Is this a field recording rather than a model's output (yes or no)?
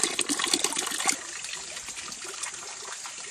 yes